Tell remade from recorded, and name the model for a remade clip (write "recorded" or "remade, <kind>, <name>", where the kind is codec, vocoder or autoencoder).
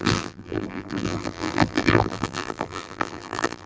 remade, vocoder, BigVGAN v2